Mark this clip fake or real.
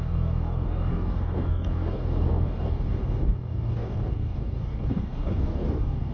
fake